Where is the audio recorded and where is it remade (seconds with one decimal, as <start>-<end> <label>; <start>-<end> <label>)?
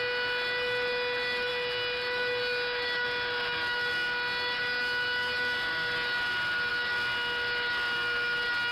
0.0-8.7 recorded